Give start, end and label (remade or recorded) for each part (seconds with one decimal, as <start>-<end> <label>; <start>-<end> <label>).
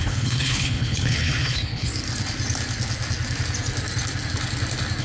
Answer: 0.0-1.9 remade; 1.9-5.0 recorded